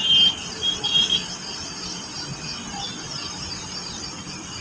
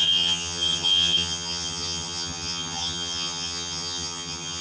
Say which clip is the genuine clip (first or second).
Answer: first